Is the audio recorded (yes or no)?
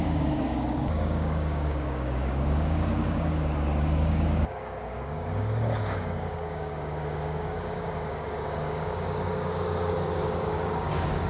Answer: no